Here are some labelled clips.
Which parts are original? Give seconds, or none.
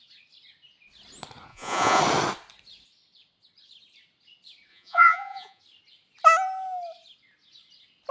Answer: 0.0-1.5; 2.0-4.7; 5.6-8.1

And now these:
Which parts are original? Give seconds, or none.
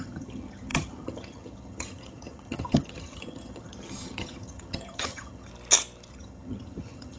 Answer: 5.5-6.1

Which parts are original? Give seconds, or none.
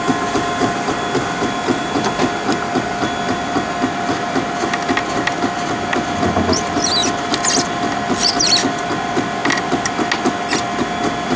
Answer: 0.0-11.4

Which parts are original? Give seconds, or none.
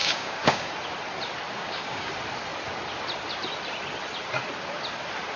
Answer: 0.7-1.6; 2.1-5.4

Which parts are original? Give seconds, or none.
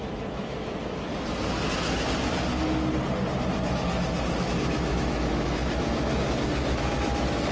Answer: 1.1-4.4